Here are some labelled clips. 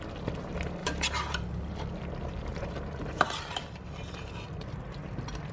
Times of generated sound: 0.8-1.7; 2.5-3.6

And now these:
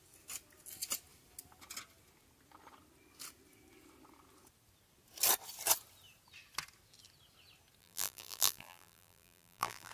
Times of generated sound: 7.8-9.9

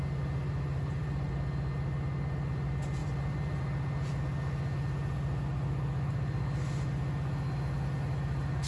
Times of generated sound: 0.7-1.3; 3.0-3.6

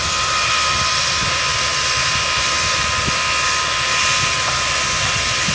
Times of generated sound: 0.0-1.5; 4.8-5.5